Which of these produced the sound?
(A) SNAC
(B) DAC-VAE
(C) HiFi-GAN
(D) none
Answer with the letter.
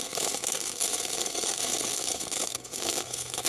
A